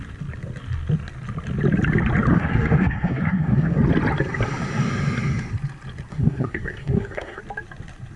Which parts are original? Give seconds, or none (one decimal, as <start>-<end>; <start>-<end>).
0.0-2.3; 3.8-6.1; 7.4-8.2